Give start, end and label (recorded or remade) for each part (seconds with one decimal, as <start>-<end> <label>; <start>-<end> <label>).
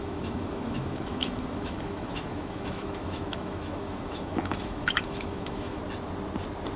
0.0-5.8 remade; 5.8-6.8 recorded